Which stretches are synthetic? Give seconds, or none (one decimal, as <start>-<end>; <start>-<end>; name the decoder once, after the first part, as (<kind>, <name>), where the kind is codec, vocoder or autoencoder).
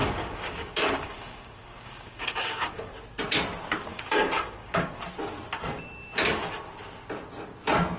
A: 0.0-2.9 (codec, DAC); 3.9-4.9